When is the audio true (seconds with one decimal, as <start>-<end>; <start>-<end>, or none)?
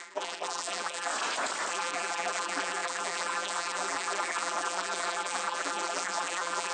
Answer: 1.1-1.7